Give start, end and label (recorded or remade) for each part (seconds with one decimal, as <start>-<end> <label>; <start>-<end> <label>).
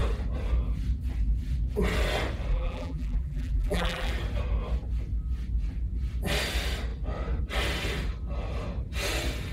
0.0-2.5 recorded; 2.5-4.1 remade; 4.1-9.5 recorded